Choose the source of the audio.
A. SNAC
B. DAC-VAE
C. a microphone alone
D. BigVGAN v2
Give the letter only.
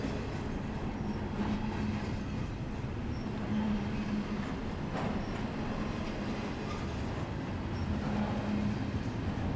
C